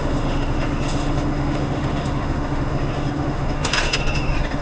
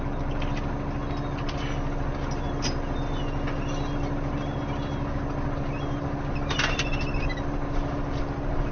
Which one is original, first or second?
second